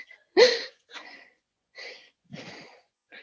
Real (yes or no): no